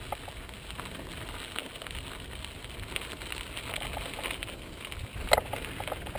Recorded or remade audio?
recorded